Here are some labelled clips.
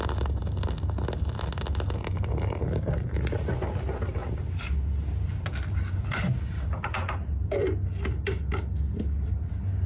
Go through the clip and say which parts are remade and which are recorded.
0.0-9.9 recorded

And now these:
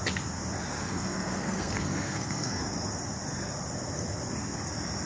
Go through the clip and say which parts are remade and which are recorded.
0.0-0.8 recorded; 0.8-2.6 remade; 2.6-5.1 recorded